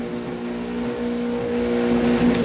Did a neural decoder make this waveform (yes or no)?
no